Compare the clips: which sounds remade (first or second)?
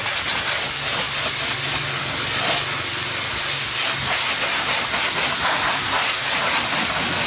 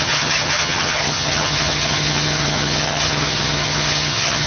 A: second